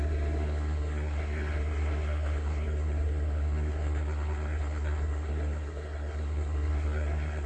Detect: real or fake fake